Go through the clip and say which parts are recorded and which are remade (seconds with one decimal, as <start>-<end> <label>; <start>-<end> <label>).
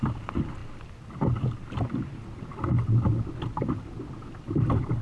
0.0-5.0 recorded